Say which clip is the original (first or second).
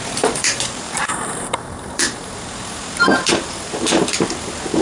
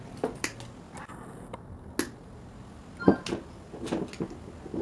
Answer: second